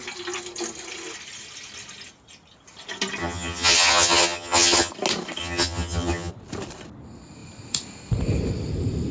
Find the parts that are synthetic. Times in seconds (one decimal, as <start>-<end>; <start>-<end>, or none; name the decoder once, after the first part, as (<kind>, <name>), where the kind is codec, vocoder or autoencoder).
3.2-4.9 (vocoder, HiFi-GAN); 5.4-6.3